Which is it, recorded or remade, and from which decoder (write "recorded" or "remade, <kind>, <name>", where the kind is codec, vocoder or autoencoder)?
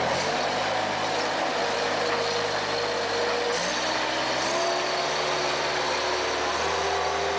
recorded